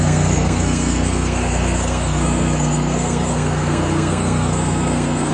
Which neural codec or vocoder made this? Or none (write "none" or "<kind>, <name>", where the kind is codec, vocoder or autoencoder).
codec, SNAC